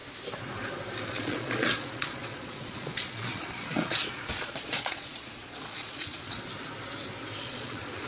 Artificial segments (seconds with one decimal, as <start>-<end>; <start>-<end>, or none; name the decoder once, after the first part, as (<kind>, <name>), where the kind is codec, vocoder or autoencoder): 1.1-6.5 (vocoder, Vocos); 7.4-8.1